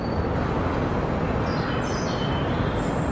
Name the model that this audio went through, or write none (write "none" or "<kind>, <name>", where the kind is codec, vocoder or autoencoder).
none